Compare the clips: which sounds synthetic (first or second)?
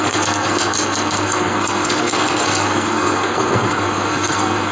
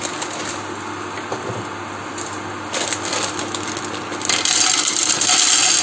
first